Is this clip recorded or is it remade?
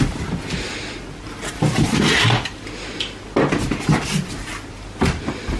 recorded